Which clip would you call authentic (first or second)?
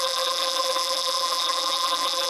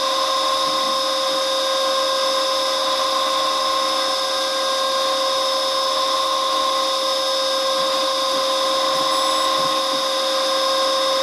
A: second